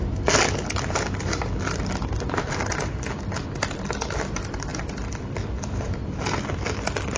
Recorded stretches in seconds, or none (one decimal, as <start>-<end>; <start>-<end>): 0.0-7.2